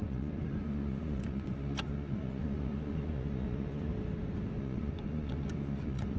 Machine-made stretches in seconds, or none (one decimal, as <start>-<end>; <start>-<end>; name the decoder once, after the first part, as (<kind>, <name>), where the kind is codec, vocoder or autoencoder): 0.0-3.9 (vocoder, Vocos); 4.6-6.2